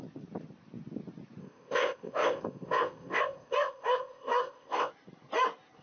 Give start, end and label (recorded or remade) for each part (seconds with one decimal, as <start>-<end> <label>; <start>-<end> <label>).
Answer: 0.0-1.4 recorded; 1.4-4.9 remade; 4.9-5.8 recorded